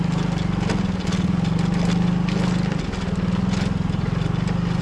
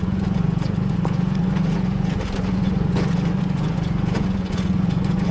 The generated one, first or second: second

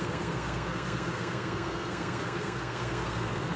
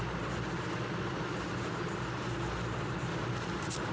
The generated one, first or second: first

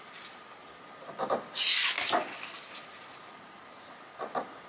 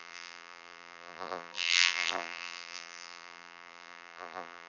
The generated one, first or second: second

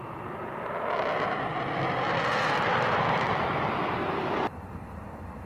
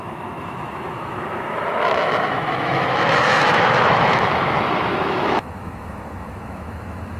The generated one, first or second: second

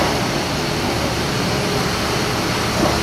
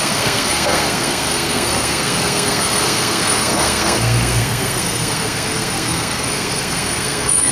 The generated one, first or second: second